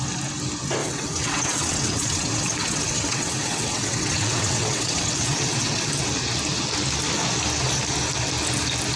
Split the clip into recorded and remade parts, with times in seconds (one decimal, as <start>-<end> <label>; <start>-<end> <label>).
0.0-0.8 recorded; 0.8-5.9 remade; 5.9-9.0 recorded